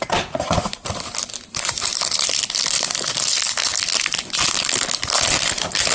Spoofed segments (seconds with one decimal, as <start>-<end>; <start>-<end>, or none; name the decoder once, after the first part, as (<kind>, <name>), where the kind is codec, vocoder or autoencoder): none